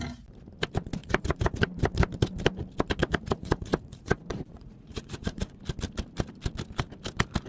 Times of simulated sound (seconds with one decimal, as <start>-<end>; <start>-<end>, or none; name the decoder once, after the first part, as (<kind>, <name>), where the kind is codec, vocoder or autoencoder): 1.0-1.8 (vocoder, Vocos); 3.0-5.6